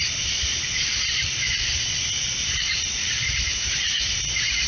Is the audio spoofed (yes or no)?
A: yes